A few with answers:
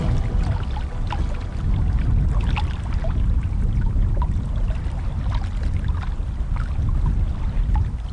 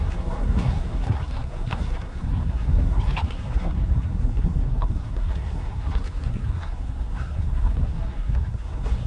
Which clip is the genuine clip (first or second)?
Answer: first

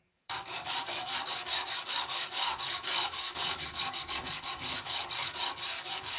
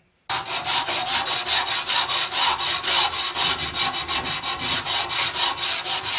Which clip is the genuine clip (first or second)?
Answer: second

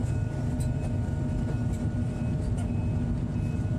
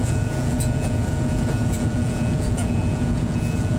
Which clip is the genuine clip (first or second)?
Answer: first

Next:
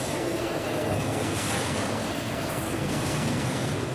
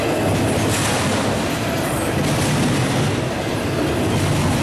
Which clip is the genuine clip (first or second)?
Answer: second